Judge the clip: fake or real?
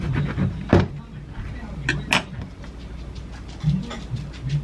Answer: real